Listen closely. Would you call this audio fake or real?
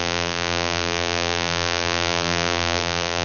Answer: fake